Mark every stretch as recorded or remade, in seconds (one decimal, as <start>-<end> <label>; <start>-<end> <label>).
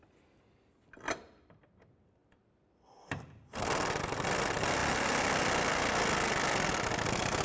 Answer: 0.0-2.2 recorded; 2.2-3.6 remade; 3.6-4.8 recorded; 4.8-5.7 remade; 5.7-7.4 recorded